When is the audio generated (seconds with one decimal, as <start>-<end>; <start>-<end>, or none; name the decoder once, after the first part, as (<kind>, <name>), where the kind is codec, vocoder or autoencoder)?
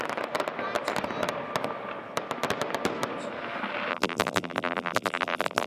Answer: 3.9-5.7 (vocoder, BigVGAN v2)